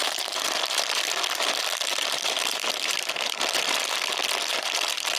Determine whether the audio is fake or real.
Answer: fake